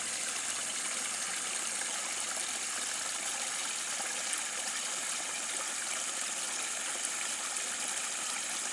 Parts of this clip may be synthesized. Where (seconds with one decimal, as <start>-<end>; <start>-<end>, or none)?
none